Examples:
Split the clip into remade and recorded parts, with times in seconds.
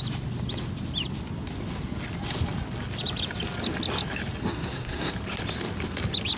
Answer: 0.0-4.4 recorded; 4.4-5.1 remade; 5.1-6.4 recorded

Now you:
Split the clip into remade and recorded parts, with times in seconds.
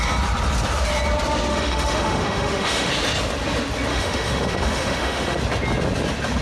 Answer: 0.0-1.5 recorded; 1.5-2.9 remade; 2.9-3.9 recorded; 3.9-5.4 remade; 5.4-6.4 recorded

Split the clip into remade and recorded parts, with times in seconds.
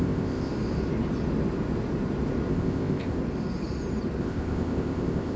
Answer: 0.0-0.5 remade; 0.5-2.5 recorded; 2.5-3.2 remade; 3.2-4.2 recorded; 4.2-5.4 remade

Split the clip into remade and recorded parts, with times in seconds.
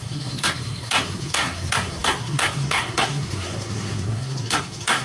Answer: 0.0-5.0 remade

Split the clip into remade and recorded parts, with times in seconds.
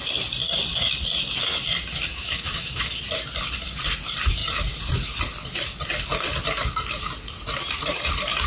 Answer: 0.0-2.1 recorded; 2.1-3.0 remade; 3.0-8.5 recorded